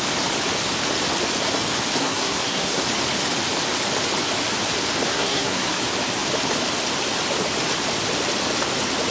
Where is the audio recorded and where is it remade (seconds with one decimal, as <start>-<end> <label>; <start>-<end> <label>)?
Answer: 0.0-2.0 recorded; 2.0-2.8 remade; 2.8-5.1 recorded; 5.1-5.7 remade; 5.7-9.1 recorded